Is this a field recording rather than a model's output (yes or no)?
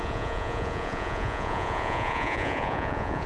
no